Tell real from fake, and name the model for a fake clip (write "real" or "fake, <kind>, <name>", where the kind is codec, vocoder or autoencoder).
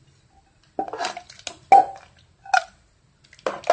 real